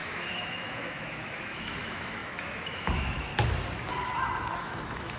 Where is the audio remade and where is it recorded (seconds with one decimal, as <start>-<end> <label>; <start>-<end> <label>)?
0.0-3.3 remade; 3.3-4.6 recorded; 4.6-5.2 remade

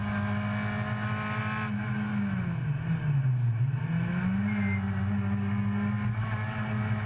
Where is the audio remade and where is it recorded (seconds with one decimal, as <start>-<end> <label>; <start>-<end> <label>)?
0.0-7.1 recorded